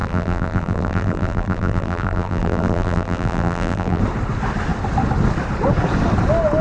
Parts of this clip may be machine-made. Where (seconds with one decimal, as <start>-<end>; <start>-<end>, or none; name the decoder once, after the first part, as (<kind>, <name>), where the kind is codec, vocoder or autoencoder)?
0.0-4.0 (vocoder, BigVGAN v2)